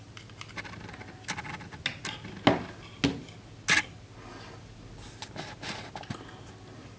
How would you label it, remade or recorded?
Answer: recorded